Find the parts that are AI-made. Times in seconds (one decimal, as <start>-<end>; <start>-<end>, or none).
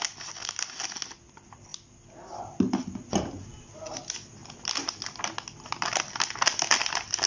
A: none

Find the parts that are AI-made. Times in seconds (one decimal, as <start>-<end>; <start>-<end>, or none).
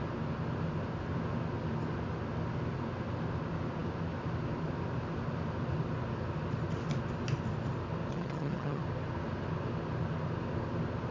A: 8.1-8.8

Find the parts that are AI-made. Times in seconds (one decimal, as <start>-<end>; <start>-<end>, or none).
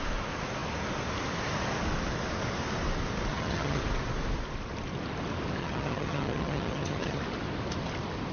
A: 3.3-3.8; 5.6-7.2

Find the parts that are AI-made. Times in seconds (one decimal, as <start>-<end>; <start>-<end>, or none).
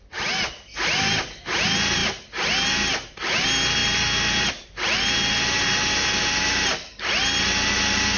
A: none